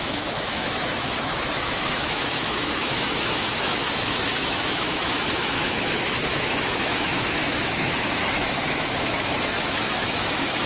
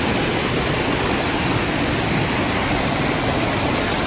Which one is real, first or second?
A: second